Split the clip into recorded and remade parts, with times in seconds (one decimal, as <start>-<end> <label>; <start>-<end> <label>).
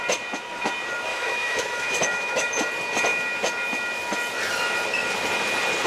0.0-1.1 recorded; 1.1-2.5 remade; 2.5-5.9 recorded